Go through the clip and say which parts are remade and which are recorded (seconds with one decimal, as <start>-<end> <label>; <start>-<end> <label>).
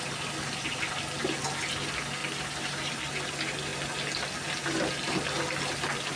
0.0-2.2 recorded; 2.2-2.9 remade; 2.9-6.2 recorded